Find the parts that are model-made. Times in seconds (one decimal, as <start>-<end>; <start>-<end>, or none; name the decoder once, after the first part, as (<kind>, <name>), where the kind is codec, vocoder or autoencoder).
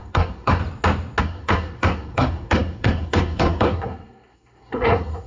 0.0-0.6 (codec, SNAC); 1.2-5.3